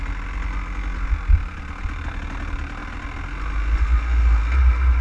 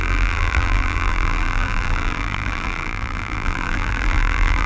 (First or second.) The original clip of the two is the first